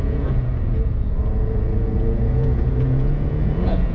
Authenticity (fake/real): fake